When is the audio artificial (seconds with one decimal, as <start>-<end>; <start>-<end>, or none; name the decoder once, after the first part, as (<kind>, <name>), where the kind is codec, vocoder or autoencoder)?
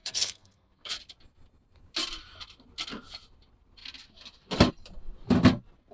0.0-0.9 (codec, SNAC)